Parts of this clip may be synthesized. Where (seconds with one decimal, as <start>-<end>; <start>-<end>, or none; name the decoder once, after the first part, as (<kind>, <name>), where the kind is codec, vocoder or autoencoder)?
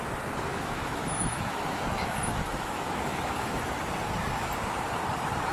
0.5-3.8 (autoencoder, DAC-VAE)